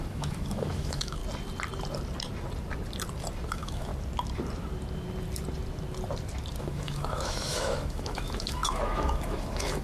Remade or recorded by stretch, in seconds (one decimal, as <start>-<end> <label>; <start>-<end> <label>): 0.0-1.2 remade; 1.2-3.5 recorded; 3.5-3.9 remade; 3.9-6.6 recorded; 6.6-9.8 remade